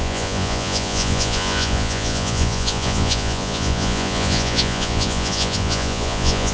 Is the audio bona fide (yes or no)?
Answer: no